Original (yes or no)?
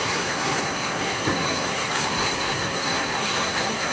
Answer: no